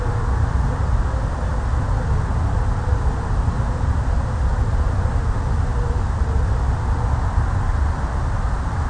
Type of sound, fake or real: real